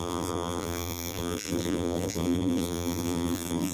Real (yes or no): no